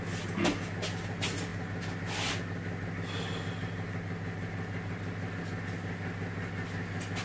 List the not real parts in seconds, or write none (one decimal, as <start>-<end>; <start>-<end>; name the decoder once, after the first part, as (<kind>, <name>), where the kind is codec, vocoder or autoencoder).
none